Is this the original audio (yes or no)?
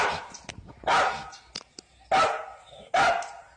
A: yes